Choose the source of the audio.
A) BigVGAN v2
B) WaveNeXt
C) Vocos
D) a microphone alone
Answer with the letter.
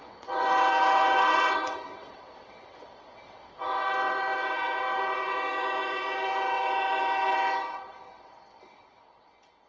B